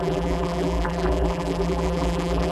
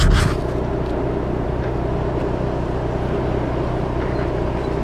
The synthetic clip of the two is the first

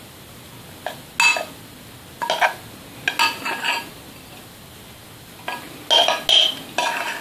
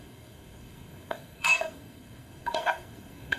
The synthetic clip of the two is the second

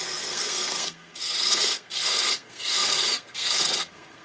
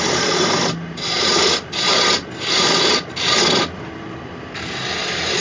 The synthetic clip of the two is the first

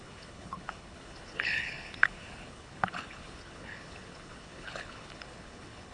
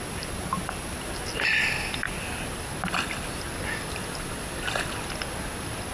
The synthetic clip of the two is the first